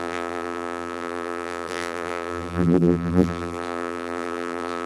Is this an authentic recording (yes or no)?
no